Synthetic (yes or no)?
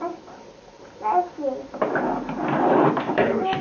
no